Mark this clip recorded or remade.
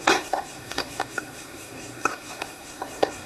remade